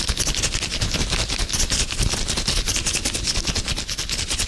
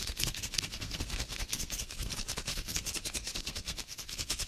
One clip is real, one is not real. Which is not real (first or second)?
second